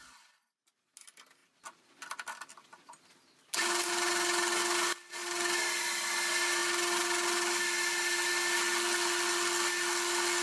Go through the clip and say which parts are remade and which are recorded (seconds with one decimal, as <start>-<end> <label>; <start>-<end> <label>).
0.0-10.4 recorded

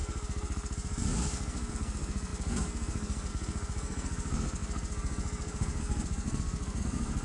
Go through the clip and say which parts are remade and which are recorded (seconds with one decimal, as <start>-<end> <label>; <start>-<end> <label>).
0.0-7.2 remade

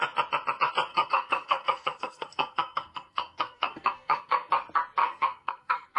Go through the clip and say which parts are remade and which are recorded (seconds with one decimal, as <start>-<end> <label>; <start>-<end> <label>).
0.0-0.9 recorded; 0.9-4.5 remade; 4.5-5.0 recorded; 5.0-6.0 remade

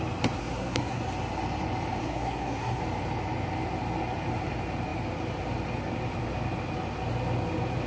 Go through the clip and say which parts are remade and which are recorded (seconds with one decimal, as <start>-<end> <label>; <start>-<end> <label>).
0.0-0.4 recorded; 0.4-1.0 remade; 1.0-2.0 recorded; 2.0-2.8 remade; 2.8-7.9 recorded

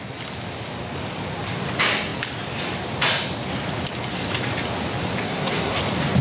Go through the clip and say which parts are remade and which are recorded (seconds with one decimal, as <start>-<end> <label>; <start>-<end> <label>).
0.0-5.2 recorded; 5.2-5.8 remade; 5.8-6.2 recorded